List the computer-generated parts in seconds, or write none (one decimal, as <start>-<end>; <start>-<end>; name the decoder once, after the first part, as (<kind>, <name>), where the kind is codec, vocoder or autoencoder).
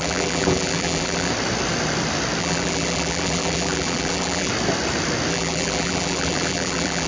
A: 0.0-1.3 (vocoder, BigVGAN v2); 2.4-4.5; 5.3-7.1